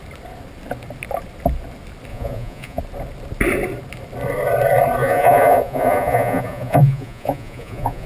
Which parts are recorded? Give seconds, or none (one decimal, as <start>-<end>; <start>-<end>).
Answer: 0.0-2.1; 2.8-5.0